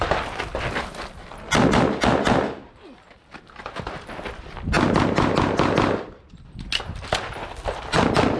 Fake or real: real